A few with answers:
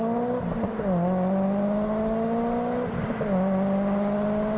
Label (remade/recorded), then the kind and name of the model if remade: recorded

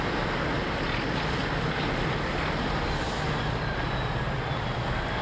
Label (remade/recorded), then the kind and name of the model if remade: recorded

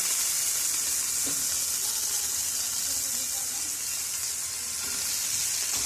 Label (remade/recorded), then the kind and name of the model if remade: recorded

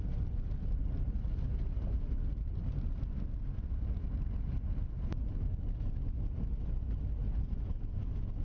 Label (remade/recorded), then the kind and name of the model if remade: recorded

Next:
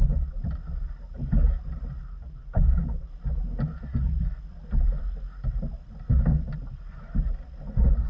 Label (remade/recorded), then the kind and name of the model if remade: recorded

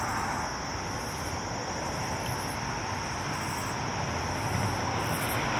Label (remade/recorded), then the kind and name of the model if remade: recorded